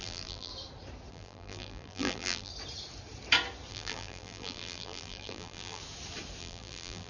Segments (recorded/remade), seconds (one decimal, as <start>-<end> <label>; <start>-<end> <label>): 0.0-0.5 remade; 0.5-1.1 recorded; 1.1-2.5 remade; 2.5-3.7 recorded; 3.7-5.8 remade; 5.8-6.4 recorded; 6.4-7.1 remade